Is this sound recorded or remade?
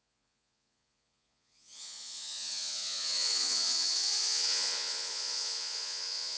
remade